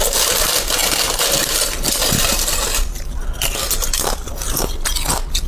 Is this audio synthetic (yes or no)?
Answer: no